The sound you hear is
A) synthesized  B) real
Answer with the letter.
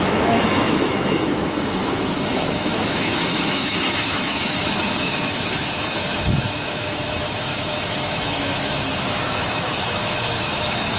A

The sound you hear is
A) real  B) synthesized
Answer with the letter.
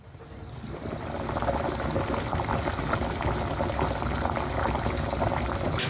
A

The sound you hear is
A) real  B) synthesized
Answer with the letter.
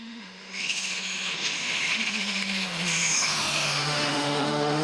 B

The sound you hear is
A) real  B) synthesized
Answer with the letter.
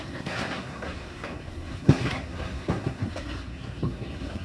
B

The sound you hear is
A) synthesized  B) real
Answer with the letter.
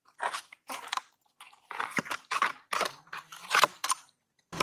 A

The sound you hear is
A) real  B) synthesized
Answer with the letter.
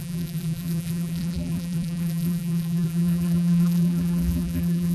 B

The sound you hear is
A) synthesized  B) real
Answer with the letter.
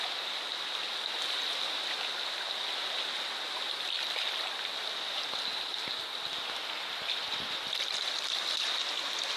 B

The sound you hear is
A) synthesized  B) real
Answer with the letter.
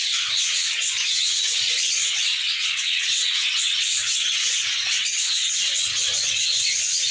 A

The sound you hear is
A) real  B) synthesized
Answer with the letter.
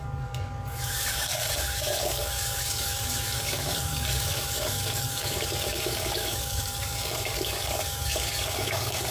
B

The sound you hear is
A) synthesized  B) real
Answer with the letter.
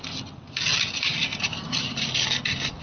B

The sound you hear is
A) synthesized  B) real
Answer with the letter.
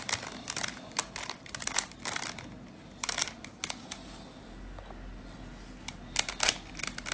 B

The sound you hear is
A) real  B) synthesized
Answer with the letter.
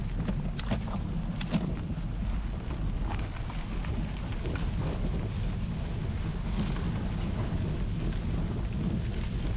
A